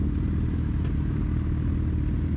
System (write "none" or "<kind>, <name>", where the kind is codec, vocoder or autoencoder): none